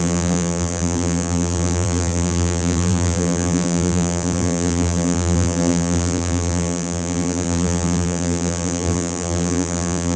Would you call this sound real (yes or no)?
no